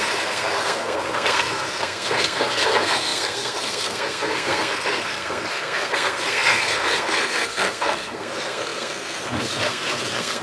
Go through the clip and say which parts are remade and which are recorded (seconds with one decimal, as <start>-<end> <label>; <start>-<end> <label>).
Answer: 0.0-10.4 remade